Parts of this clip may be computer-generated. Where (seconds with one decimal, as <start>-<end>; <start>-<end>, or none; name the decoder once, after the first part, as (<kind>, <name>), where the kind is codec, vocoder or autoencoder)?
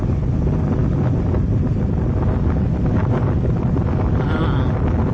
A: none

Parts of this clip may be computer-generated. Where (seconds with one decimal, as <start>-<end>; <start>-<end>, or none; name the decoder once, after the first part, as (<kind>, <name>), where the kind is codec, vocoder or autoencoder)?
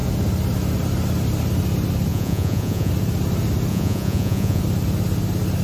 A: 2.1-2.9 (vocoder, Vocos); 3.7-4.6